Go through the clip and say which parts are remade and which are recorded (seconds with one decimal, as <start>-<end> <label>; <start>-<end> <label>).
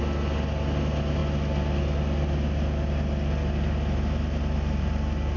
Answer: 0.0-5.4 recorded